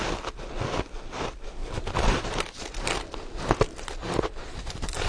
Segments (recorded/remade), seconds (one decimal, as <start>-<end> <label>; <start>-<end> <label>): 0.0-1.6 recorded; 1.6-2.4 remade; 2.4-4.0 recorded; 4.0-5.1 remade